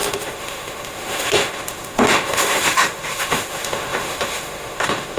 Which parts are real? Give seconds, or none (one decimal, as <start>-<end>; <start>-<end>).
none